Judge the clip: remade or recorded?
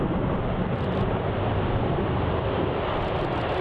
recorded